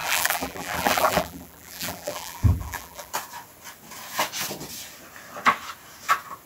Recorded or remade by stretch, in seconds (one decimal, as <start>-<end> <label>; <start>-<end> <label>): 0.0-3.1 remade; 3.1-6.5 recorded